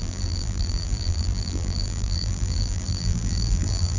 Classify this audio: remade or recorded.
remade